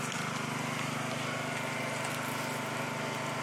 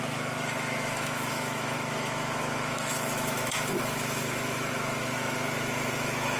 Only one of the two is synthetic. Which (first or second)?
second